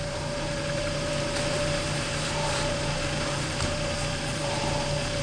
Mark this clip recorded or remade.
remade